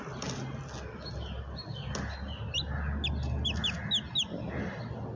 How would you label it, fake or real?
real